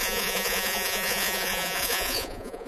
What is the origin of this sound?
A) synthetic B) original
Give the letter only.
A